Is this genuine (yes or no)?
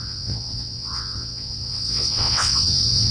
no